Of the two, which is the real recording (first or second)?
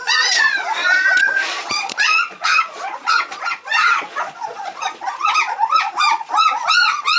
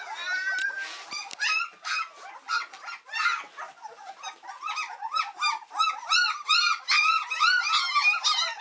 second